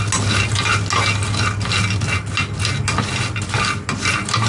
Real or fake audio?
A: real